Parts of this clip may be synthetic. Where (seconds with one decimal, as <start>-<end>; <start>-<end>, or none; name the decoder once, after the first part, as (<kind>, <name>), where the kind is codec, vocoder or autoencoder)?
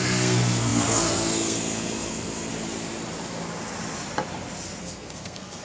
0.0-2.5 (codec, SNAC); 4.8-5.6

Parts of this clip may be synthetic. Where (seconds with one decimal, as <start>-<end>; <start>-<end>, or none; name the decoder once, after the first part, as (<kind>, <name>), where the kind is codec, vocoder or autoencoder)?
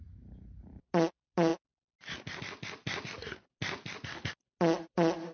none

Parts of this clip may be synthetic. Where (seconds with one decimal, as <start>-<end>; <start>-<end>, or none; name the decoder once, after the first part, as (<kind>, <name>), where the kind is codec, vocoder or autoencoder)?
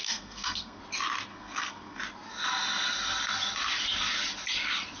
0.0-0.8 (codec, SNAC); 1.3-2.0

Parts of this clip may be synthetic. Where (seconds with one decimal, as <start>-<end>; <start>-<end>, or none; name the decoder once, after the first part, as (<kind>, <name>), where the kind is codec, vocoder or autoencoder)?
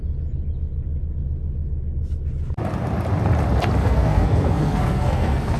3.8-5.6 (codec, SNAC)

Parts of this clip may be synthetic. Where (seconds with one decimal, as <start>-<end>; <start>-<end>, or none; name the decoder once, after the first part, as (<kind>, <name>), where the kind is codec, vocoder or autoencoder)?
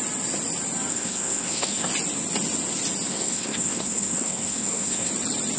0.9-1.9 (codec, SNAC); 3.1-5.1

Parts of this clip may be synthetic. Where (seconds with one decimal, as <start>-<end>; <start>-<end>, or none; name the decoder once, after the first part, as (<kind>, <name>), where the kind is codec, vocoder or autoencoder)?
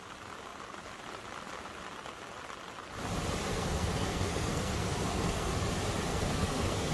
3.5-5.5 (codec, SNAC); 6.1-6.9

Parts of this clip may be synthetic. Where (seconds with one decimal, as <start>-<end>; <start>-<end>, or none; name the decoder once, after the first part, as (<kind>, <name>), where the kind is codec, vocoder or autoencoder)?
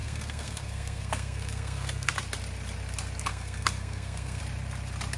0.0-2.1 (codec, SNAC); 3.3-4.4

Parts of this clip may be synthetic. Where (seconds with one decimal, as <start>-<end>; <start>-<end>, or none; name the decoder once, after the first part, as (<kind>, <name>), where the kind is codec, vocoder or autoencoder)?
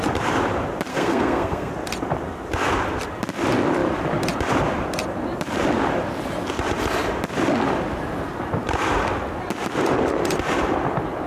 0.9-1.7 (codec, SNAC)